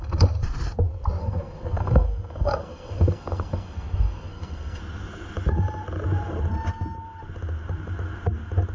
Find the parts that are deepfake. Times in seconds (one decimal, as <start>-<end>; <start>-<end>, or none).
1.2-4.8